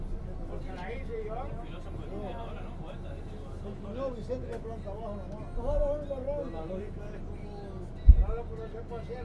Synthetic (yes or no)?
no